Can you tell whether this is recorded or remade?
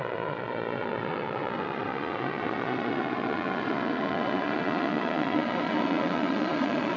remade